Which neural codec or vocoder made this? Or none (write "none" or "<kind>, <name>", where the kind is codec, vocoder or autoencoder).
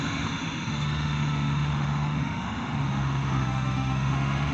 autoencoder, DAC-VAE